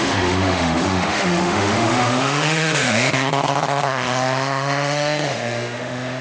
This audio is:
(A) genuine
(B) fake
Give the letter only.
B